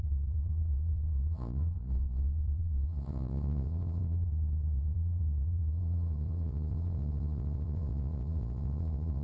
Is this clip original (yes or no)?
no